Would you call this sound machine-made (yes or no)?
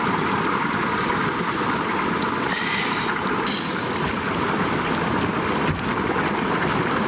yes